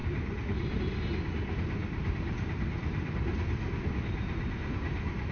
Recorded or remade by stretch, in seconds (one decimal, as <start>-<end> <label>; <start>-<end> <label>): 0.0-5.3 recorded